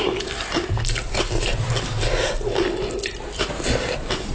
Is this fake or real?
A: real